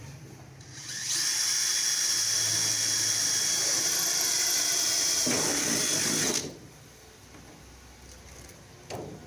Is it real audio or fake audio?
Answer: real